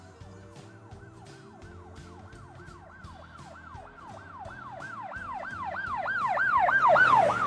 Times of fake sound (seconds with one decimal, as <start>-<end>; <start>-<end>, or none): none